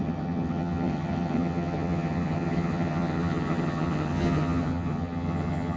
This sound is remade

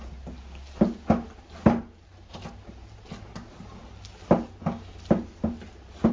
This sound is recorded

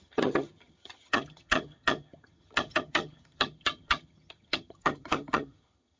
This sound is remade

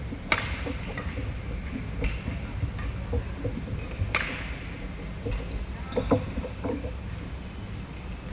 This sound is recorded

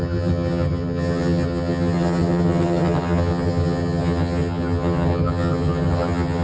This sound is remade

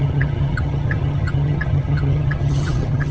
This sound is remade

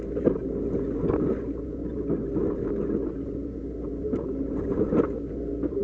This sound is recorded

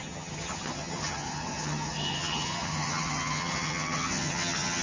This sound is remade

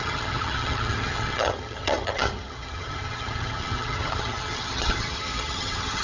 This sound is remade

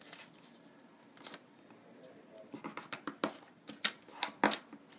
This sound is recorded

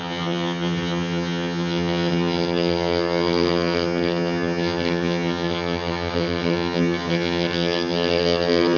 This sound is remade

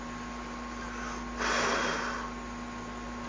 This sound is recorded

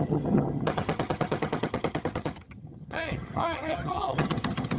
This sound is remade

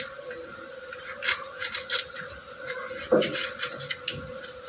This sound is recorded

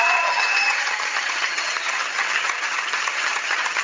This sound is remade